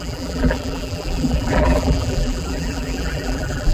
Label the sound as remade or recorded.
remade